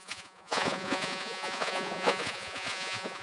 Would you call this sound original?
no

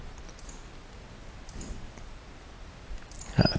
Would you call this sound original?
yes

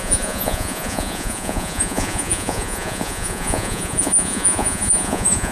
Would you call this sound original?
no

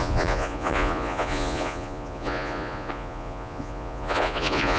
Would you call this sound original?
no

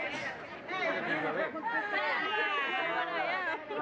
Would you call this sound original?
yes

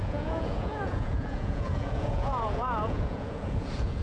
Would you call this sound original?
no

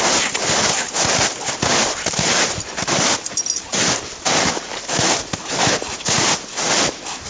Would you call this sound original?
yes